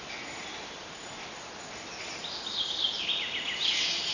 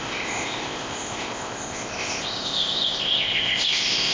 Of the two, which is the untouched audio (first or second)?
first